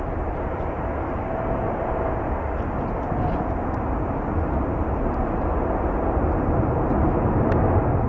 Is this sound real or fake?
real